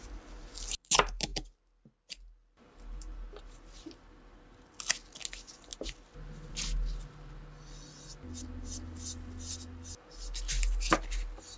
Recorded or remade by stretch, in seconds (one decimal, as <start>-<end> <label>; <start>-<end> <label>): 0.0-11.6 recorded